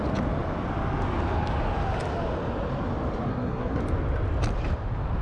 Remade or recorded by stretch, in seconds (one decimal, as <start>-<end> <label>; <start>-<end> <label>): 0.0-3.3 recorded; 3.3-3.8 remade; 3.8-5.2 recorded